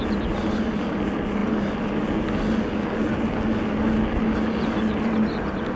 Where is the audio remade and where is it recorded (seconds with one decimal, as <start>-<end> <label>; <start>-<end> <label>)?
0.0-5.8 recorded